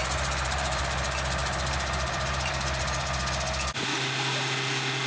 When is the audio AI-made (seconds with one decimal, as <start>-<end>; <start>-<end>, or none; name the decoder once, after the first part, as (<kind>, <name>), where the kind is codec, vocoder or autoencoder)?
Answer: 0.0-0.8 (vocoder, BigVGAN v2); 1.4-3.0